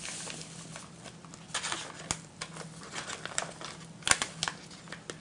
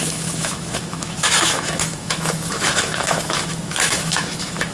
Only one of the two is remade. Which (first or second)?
second